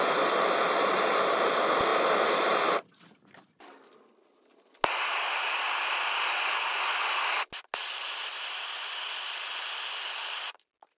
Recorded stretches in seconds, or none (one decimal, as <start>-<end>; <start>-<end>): 0.0-11.0